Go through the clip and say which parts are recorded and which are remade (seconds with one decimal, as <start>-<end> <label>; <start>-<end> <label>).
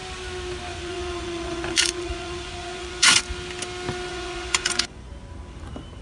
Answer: 0.0-0.7 recorded; 0.7-3.2 remade; 3.2-4.1 recorded; 4.1-5.1 remade; 5.1-6.0 recorded